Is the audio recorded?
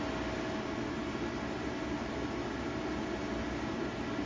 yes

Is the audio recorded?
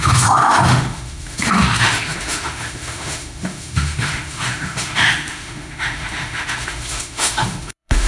no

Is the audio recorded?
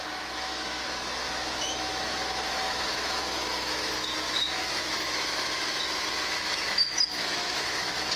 no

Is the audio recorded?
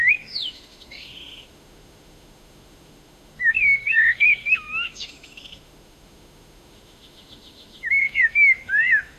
no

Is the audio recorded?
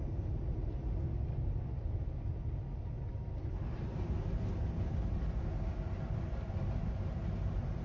yes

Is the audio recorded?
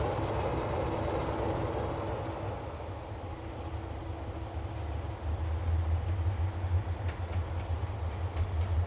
yes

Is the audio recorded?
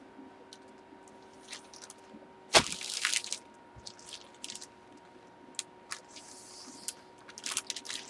yes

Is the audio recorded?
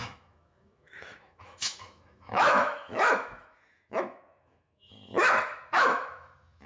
no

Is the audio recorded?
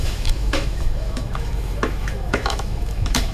no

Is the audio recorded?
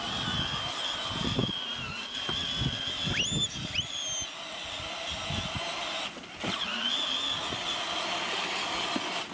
yes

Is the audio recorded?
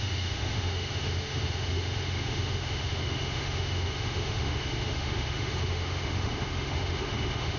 no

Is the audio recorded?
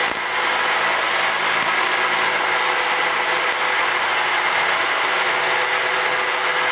yes